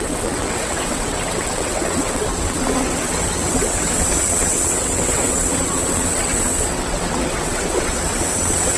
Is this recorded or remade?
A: remade